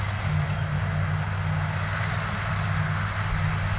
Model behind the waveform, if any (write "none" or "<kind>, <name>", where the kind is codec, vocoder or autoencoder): none